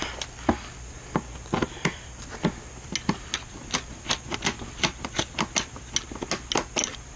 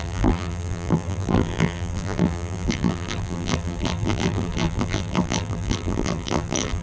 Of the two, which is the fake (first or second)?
second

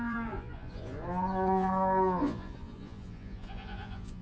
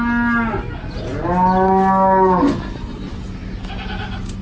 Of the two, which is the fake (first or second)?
first